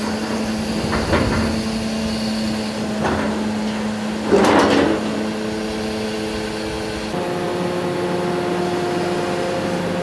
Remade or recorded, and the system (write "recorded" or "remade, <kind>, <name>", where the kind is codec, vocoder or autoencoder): recorded